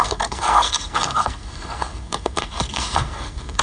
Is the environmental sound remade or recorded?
remade